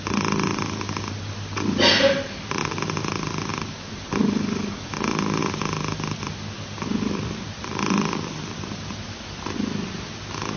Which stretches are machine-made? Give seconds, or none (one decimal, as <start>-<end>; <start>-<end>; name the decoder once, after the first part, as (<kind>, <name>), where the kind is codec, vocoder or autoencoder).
5.4-10.6 (vocoder, BigVGAN v2)